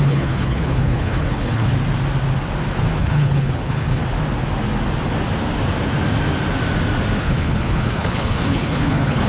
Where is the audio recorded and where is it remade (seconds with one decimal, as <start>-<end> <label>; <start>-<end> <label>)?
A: 0.0-1.7 remade; 1.7-3.0 recorded; 3.0-4.0 remade; 4.0-7.2 recorded; 7.2-9.3 remade